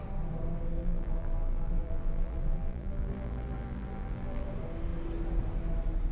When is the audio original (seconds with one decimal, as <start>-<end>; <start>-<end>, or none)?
0.0-0.8; 4.5-6.1